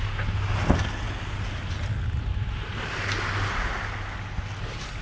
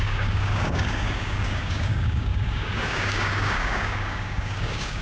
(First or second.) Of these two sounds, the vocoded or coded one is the second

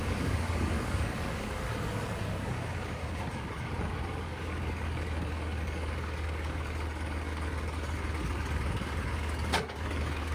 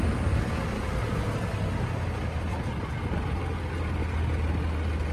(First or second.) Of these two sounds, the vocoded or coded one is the first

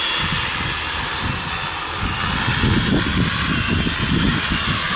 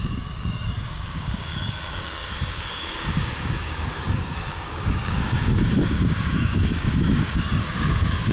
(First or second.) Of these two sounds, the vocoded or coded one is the second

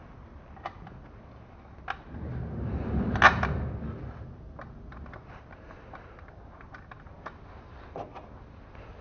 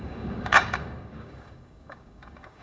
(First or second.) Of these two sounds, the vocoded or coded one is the second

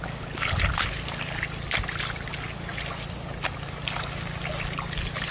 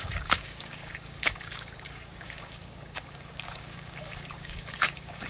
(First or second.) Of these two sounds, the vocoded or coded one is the second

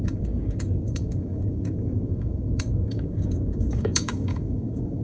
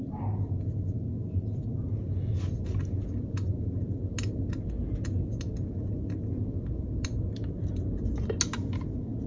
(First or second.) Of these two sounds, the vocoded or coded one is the first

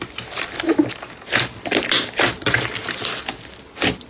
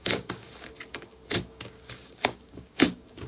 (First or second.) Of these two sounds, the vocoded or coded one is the second